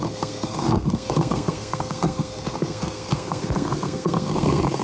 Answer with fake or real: fake